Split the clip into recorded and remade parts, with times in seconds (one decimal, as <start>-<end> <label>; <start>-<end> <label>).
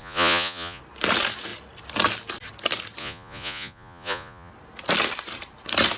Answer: 0.0-0.8 remade; 0.8-3.0 recorded; 3.0-4.5 remade; 4.5-6.0 recorded